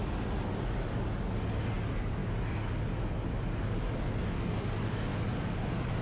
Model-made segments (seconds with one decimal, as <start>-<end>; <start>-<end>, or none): none